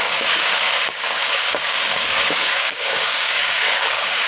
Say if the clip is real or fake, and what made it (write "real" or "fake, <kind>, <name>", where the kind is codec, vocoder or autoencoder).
fake, codec, DAC